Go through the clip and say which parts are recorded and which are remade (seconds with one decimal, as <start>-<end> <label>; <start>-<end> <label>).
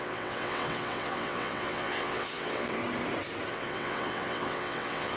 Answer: 0.0-2.8 remade; 2.8-3.5 recorded; 3.5-5.2 remade